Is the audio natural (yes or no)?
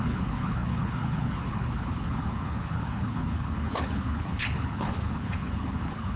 no